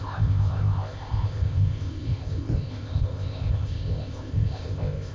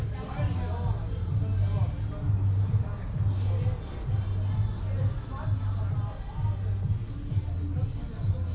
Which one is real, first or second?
second